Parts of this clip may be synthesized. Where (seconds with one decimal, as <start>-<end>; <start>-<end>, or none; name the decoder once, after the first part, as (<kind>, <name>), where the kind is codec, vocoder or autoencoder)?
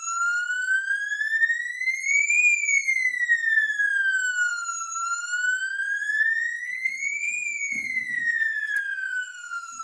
5.8-9.8 (vocoder, Vocos)